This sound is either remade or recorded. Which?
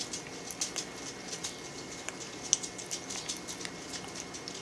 recorded